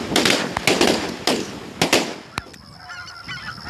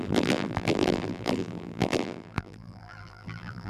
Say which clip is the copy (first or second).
second